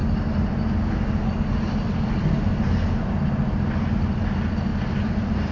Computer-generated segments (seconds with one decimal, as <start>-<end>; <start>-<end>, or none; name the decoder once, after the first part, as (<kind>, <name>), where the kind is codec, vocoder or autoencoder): none